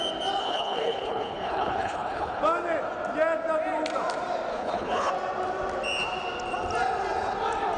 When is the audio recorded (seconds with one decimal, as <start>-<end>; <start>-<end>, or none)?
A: 0.0-0.4; 2.4-4.5; 5.1-7.8

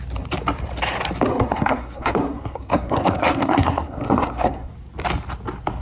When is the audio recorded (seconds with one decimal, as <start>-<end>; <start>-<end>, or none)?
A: 0.0-1.3; 4.7-5.8